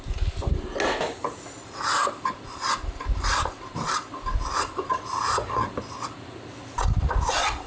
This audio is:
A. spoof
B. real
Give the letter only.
B